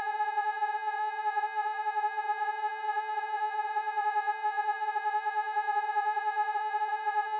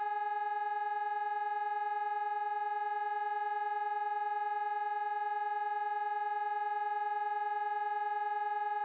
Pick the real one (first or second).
second